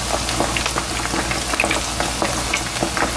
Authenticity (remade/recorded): recorded